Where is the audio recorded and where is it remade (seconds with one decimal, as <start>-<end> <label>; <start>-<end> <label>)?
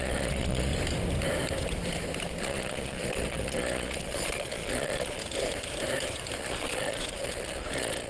0.0-0.7 remade; 0.7-2.4 recorded; 2.4-5.2 remade; 5.2-6.4 recorded; 6.4-8.1 remade